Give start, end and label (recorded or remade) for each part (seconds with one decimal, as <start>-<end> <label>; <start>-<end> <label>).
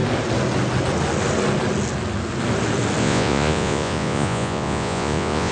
0.0-3.0 recorded; 3.0-5.5 remade